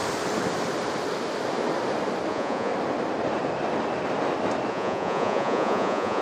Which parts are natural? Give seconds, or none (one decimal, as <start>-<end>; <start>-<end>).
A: 0.0-2.3; 2.7-4.7